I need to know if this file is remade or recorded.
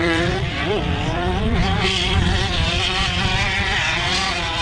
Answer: remade